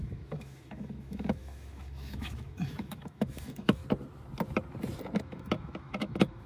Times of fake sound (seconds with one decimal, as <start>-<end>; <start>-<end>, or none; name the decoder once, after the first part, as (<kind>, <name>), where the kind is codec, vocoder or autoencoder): 0.0-3.8 (autoencoder, DAC-VAE); 5.2-6.5